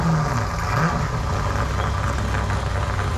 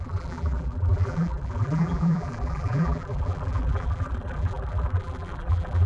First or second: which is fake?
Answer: second